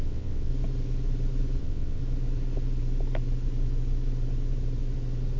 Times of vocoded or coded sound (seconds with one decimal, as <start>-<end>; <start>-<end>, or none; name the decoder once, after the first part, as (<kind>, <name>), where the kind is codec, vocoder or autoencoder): 0.0-0.5 (vocoder, WaveNeXt); 1.6-2.0